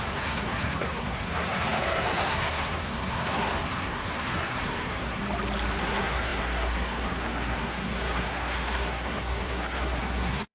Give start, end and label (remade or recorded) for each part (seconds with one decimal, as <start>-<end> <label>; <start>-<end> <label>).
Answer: 0.0-5.2 remade; 5.2-5.8 recorded; 5.8-10.5 remade